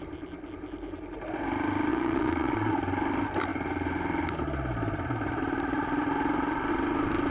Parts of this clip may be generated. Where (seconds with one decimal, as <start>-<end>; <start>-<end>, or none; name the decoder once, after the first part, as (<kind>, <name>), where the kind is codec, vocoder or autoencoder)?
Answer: 1.9-2.7 (vocoder, Vocos)